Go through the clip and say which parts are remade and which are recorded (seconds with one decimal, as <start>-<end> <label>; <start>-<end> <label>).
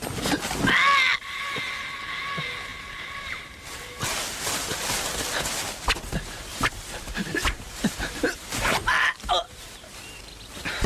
0.0-2.7 recorded; 2.7-4.4 remade; 4.4-6.5 recorded; 6.5-10.2 remade; 10.2-10.9 recorded